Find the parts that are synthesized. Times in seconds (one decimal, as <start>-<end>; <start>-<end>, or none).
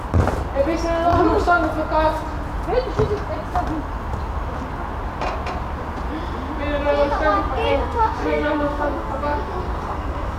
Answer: 7.7-10.4